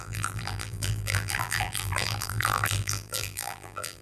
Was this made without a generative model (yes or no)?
no